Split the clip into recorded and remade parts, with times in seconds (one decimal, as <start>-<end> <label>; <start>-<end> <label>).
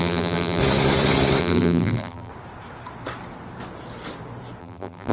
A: 0.0-0.6 remade; 0.6-1.4 recorded; 1.4-2.3 remade; 2.3-4.6 recorded; 4.6-5.1 remade